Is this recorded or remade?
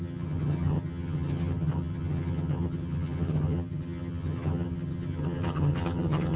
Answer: remade